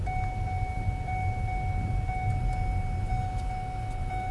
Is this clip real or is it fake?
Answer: real